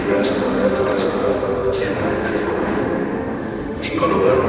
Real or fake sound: fake